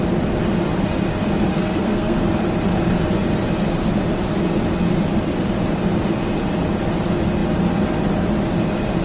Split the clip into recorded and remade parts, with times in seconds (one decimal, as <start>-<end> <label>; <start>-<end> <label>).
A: 0.0-1.5 recorded; 1.5-2.2 remade; 2.2-9.0 recorded